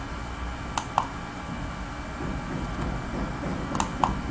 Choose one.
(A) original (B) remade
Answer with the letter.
A